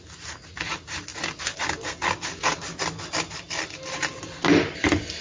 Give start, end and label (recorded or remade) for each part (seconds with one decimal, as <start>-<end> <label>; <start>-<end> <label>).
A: 0.0-5.2 recorded